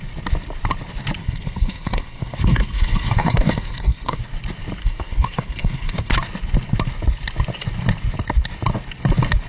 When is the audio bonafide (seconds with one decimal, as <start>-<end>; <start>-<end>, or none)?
0.0-1.2; 4.2-4.8; 6.1-9.5